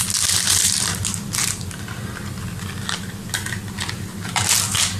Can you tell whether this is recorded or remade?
recorded